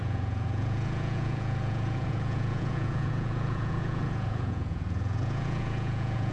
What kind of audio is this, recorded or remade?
remade